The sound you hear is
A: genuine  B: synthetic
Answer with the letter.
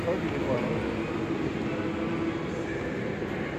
A